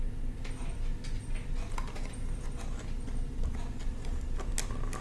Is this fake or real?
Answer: real